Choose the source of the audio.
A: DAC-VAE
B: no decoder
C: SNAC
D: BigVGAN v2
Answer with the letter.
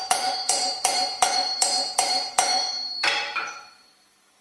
D